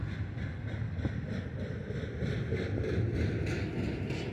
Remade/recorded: recorded